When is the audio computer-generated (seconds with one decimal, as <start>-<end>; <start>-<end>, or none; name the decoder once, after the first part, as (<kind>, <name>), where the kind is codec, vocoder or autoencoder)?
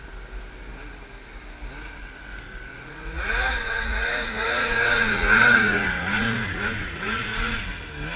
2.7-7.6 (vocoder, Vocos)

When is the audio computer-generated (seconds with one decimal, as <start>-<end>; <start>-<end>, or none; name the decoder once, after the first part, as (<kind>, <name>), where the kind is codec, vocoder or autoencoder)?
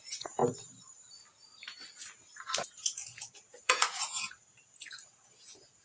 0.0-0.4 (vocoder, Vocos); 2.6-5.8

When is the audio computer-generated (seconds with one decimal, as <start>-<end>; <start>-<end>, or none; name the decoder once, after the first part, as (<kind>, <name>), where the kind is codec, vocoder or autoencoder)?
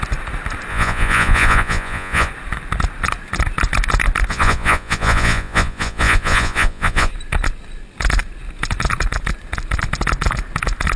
0.7-2.3 (vocoder, Vocos); 4.3-7.1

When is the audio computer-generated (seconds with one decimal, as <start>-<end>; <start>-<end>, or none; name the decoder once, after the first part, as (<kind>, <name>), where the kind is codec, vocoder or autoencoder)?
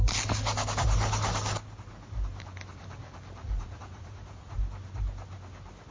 3.4-4.6 (vocoder, Vocos)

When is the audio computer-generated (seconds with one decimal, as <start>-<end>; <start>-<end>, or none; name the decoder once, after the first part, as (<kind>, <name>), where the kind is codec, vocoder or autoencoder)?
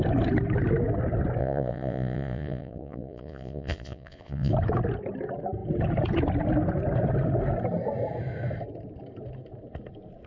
1.4-4.5 (vocoder, Vocos)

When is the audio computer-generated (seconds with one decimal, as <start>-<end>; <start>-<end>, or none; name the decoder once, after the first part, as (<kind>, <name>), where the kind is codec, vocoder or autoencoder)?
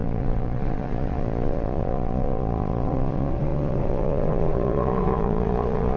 0.0-6.0 (vocoder, Vocos)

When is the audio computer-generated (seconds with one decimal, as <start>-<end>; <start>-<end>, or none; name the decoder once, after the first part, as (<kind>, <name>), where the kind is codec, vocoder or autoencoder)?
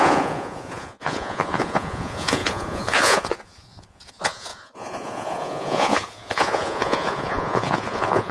0.0-8.3 (vocoder, Vocos)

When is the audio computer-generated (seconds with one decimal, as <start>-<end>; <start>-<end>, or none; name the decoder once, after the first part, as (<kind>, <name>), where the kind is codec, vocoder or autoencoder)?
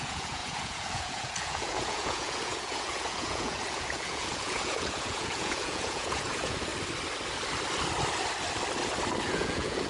0.0-6.7 (vocoder, Vocos); 9.3-9.9